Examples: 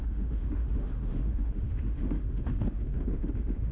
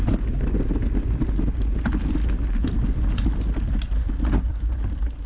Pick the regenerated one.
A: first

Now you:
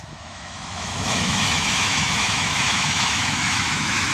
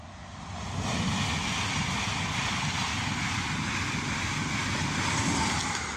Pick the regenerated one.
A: first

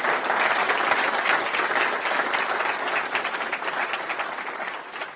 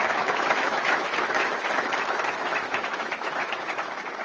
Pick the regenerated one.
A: second